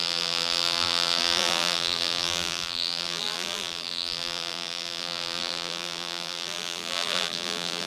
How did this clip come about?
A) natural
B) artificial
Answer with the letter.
B